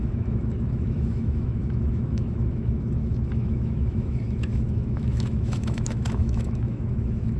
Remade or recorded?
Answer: remade